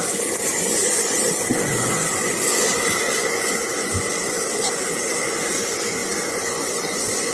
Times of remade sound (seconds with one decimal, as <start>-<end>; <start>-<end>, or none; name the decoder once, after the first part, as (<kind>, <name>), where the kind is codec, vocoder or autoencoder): 0.0-7.3 (vocoder, Vocos)